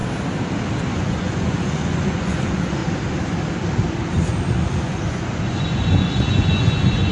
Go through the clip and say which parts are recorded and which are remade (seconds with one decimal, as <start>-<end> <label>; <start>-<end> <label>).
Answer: 0.0-0.9 recorded; 0.9-2.8 remade; 2.8-4.7 recorded; 4.7-7.1 remade